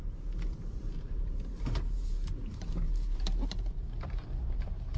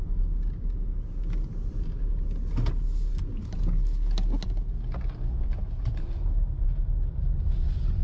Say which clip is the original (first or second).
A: second